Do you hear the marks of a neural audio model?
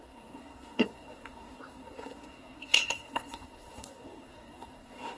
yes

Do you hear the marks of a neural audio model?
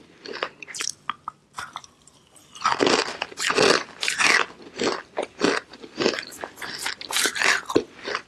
no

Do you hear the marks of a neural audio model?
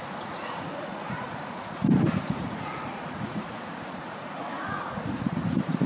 yes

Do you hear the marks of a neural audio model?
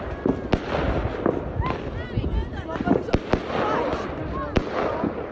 no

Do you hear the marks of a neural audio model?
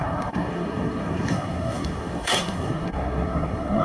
yes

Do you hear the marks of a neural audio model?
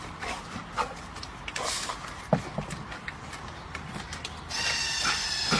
no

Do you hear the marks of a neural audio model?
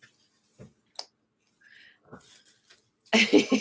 no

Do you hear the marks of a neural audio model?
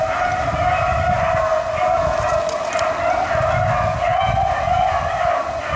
no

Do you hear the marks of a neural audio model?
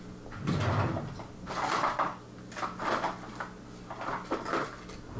no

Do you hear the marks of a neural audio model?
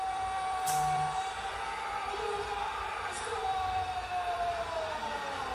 yes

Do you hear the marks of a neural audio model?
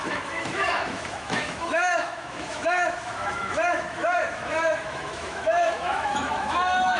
yes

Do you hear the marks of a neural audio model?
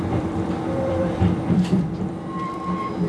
yes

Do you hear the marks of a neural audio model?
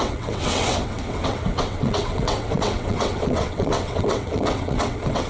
yes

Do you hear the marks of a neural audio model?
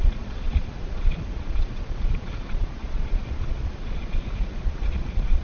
yes